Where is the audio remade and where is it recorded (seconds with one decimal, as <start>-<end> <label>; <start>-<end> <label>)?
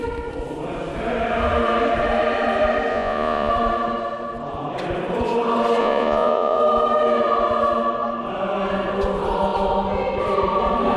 0.0-2.9 recorded; 2.9-3.5 remade; 3.5-5.8 recorded; 5.8-6.6 remade; 6.6-11.0 recorded